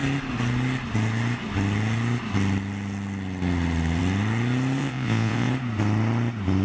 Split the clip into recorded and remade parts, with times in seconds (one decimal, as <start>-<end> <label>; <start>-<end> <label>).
0.0-4.8 recorded; 4.8-5.5 remade; 5.5-6.6 recorded